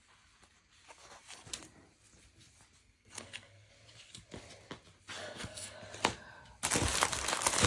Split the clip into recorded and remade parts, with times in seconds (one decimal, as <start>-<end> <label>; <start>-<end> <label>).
0.0-2.8 recorded; 2.8-3.7 remade; 3.7-5.2 recorded; 5.2-5.8 remade; 5.8-7.7 recorded